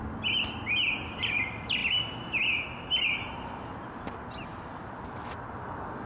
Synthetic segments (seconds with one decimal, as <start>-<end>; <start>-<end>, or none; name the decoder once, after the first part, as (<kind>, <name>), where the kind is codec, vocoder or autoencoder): none